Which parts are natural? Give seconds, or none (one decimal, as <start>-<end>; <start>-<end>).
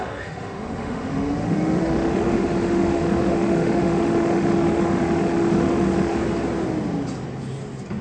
6.2-8.0